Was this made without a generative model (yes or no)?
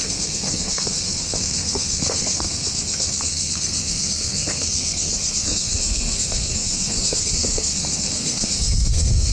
no